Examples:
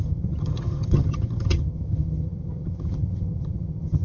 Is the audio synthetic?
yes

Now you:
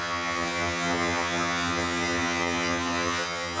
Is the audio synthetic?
yes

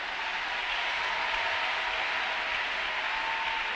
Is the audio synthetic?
no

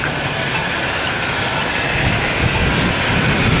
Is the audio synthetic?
no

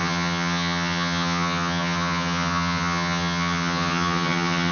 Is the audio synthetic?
yes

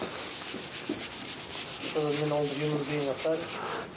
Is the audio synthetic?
no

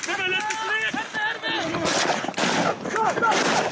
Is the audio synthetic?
no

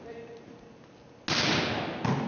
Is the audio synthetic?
no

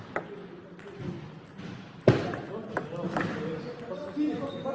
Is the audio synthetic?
no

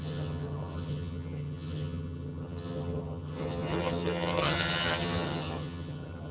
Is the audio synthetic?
yes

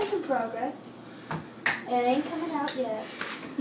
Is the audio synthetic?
no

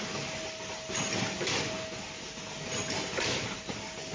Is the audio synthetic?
no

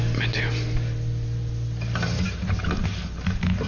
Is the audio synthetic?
no